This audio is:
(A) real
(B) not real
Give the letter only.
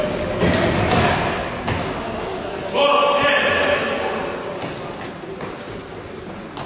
A